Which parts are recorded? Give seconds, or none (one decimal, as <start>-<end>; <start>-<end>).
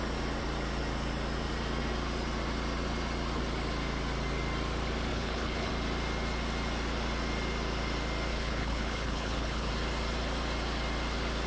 0.0-5.1; 5.7-8.3; 9.7-11.5